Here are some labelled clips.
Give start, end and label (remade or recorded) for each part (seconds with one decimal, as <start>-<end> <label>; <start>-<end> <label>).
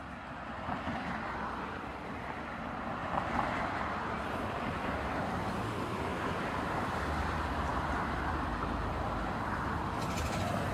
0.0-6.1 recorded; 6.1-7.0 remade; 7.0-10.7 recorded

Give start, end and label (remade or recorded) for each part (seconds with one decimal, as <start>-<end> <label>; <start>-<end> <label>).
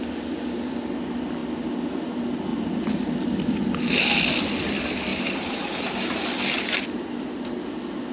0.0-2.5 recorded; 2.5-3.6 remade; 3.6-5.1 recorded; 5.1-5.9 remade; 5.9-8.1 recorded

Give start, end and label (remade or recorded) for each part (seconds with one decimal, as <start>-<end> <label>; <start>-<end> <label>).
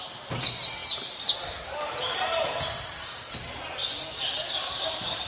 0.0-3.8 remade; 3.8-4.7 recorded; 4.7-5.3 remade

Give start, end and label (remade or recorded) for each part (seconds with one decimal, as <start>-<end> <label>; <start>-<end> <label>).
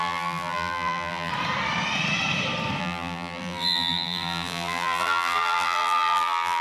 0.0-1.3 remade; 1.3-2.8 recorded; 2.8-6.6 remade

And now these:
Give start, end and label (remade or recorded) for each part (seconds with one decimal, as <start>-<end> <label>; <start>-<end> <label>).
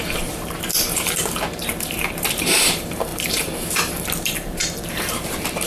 0.0-5.7 remade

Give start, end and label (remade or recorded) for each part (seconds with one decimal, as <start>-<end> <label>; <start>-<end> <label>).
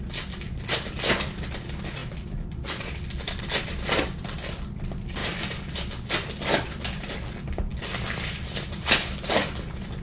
0.0-2.0 recorded; 2.0-4.2 remade; 4.2-7.7 recorded; 7.7-9.0 remade; 9.0-10.0 recorded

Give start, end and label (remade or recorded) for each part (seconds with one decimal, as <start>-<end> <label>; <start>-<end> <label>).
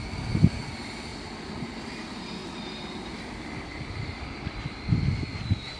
0.0-1.1 recorded; 1.1-1.8 remade; 1.8-2.4 recorded; 2.4-5.8 remade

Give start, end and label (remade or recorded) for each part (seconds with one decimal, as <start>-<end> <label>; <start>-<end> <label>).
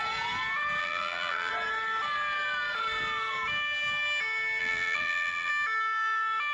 0.0-0.8 recorded; 0.8-1.5 remade; 1.5-4.6 recorded; 4.6-5.5 remade; 5.5-6.5 recorded